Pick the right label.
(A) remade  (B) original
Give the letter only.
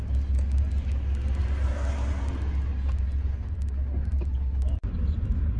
B